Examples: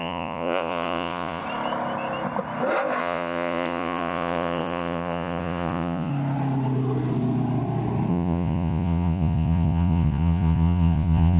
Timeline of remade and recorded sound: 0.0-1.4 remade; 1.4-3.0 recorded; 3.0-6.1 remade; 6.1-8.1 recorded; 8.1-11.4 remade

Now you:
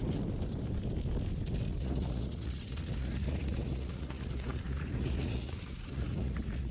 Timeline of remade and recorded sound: 0.0-1.8 recorded; 1.8-6.7 remade

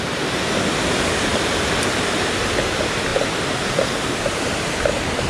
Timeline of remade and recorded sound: 0.0-5.3 recorded

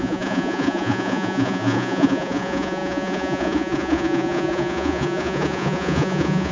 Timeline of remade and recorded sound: 0.0-6.5 remade

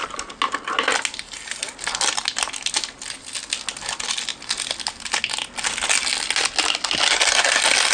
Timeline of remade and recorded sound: 0.0-7.9 recorded

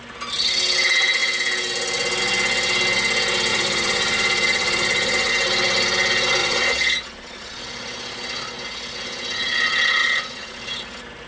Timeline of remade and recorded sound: 0.0-3.5 recorded; 3.5-5.3 remade; 5.3-6.4 recorded; 6.4-7.6 remade; 7.6-10.0 recorded; 10.0-10.6 remade; 10.6-11.3 recorded

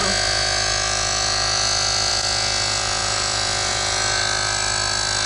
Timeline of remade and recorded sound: 0.0-4.2 remade; 4.2-5.3 recorded

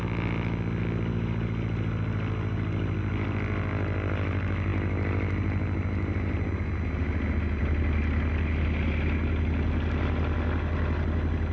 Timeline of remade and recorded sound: 0.0-11.5 recorded